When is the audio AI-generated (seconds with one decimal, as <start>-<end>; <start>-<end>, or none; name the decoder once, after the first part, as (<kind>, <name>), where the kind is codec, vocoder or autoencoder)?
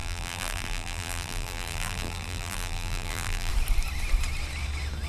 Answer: 0.0-3.5 (vocoder, BigVGAN v2)